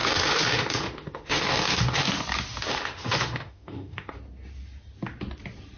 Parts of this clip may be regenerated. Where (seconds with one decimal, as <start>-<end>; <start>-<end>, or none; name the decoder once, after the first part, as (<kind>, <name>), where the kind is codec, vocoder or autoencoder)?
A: 0.0-2.1 (autoencoder, DAC-VAE); 2.7-4.1